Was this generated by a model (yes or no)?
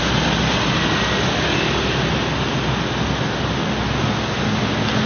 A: no